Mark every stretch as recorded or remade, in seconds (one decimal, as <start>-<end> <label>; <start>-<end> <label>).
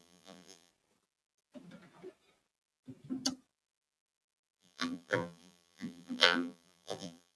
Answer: 0.0-0.7 remade; 0.7-4.6 recorded; 4.6-7.4 remade